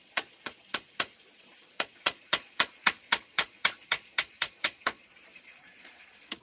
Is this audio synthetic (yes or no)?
yes